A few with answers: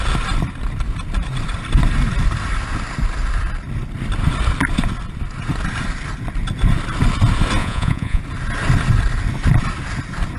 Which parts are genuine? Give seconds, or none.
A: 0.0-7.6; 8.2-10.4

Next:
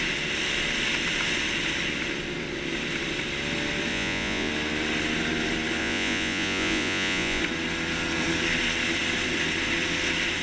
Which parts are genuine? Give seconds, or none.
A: 0.0-3.9; 4.5-5.8; 7.4-10.4

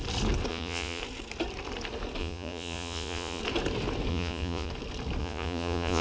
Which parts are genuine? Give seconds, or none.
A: 0.0-0.5; 1.0-2.2; 3.4-4.1; 4.7-5.2

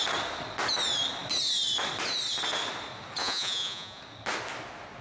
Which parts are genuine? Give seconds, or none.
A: 0.0-3.2; 4.0-5.0

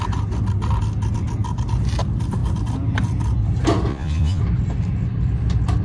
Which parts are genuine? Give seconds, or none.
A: 0.0-3.9; 4.4-5.8

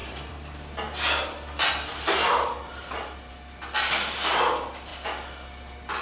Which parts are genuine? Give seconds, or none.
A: 0.0-6.0

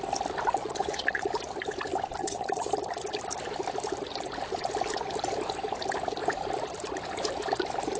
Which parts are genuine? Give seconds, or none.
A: 0.0-0.6; 1.3-2.2; 2.7-8.0